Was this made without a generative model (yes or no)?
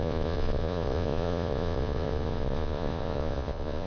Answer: no